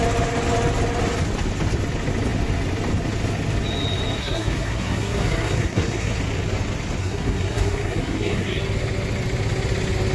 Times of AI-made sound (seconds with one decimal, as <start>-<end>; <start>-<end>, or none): 4.2-6.2; 7.0-8.6